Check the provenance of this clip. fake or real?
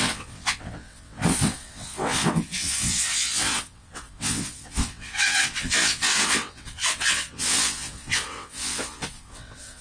fake